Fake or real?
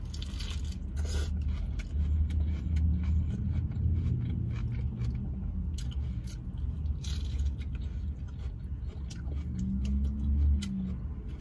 real